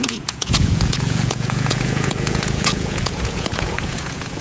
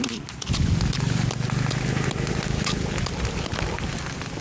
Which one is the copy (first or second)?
first